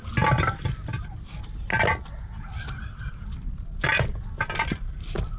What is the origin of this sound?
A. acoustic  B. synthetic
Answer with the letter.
A